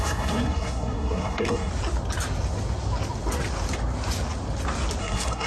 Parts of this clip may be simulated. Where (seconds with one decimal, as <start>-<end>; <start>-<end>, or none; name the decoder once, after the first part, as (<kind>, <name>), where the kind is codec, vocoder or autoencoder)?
0.0-1.7 (codec, SNAC); 5.0-5.5